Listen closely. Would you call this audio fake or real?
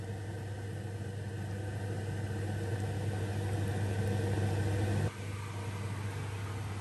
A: real